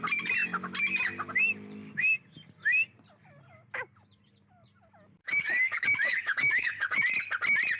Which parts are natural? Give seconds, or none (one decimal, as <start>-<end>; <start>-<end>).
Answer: 0.0-5.2; 7.0-7.8